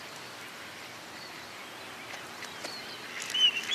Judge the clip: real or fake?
real